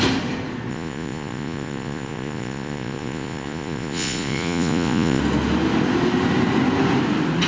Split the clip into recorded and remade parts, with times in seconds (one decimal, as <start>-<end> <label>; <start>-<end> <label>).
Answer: 0.0-0.7 recorded; 0.7-5.2 remade; 5.2-7.5 recorded